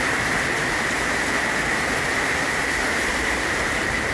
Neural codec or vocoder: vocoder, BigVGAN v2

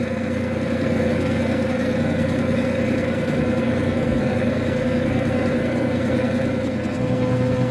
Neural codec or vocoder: codec, SNAC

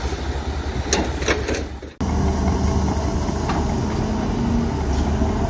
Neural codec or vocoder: none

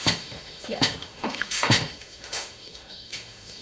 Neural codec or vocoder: autoencoder, DAC-VAE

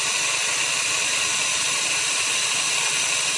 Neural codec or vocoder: none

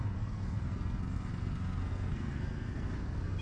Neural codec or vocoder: codec, SNAC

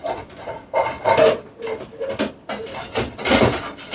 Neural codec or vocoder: none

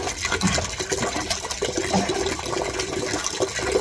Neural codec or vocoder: none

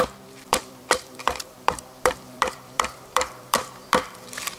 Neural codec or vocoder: vocoder, BigVGAN v2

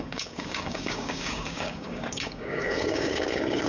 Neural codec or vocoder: codec, DAC